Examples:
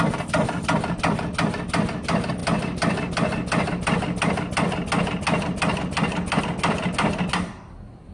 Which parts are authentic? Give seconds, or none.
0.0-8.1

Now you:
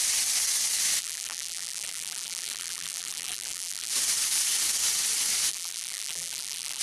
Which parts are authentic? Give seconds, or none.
0.0-1.0; 3.9-5.5

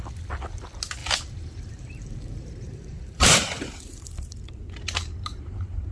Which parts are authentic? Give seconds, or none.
0.0-1.0; 4.5-5.9